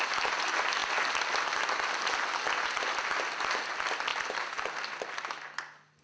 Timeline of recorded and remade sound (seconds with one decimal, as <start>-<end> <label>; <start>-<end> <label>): 0.0-6.0 recorded